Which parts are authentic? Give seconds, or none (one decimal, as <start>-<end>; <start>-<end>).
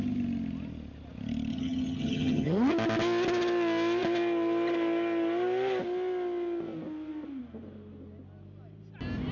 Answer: 0.0-1.5; 2.7-9.3